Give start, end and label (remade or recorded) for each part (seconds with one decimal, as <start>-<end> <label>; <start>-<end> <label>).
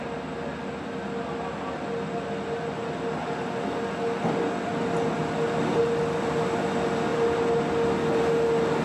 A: 0.0-8.8 recorded